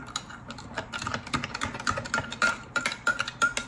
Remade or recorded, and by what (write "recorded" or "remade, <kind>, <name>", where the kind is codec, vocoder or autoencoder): recorded